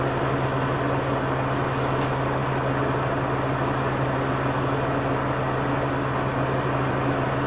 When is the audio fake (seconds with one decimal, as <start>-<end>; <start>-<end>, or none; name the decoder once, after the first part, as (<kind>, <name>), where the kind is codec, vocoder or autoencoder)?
none